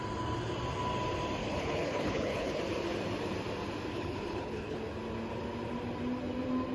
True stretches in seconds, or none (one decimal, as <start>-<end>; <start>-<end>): 0.0-1.4; 2.6-3.9; 4.8-6.7